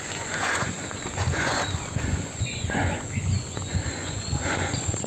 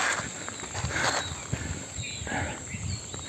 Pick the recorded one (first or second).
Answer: second